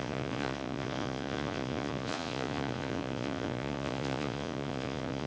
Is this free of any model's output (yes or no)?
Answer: no